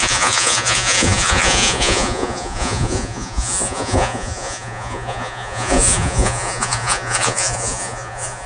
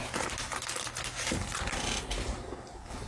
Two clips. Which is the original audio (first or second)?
second